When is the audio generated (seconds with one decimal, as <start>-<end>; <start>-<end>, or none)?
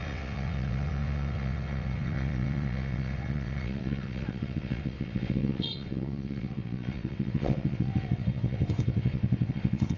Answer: 0.0-10.0